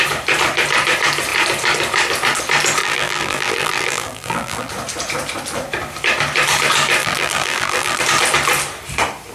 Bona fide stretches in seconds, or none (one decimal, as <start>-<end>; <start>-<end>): 0.0-2.8; 4.7-7.0; 8.0-9.3